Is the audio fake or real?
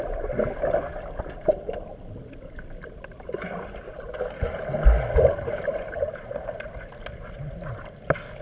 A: real